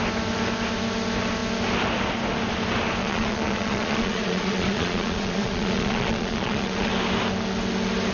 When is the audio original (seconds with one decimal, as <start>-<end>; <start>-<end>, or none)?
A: 0.0-3.0; 6.9-8.1